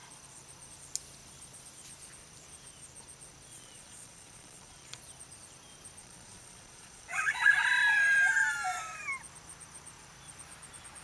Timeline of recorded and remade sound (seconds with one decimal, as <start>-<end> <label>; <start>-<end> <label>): 0.0-3.5 recorded; 3.5-5.0 remade; 5.0-6.0 recorded; 6.0-7.6 remade; 7.6-11.0 recorded